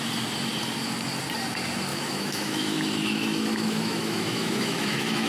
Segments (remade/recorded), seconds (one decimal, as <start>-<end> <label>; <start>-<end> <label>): 0.0-1.9 recorded; 1.9-5.3 remade